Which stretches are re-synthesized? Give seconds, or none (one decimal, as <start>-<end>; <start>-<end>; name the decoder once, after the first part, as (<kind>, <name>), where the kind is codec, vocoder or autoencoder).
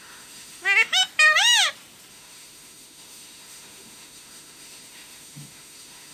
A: 0.0-1.0 (autoencoder, DAC-VAE); 2.1-6.1